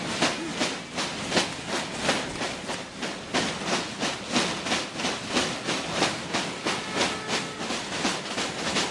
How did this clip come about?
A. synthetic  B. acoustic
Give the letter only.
B